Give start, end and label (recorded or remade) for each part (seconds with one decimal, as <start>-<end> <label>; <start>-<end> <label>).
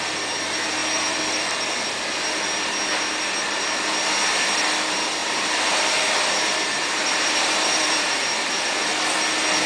0.0-5.2 recorded; 5.2-8.9 remade; 8.9-9.7 recorded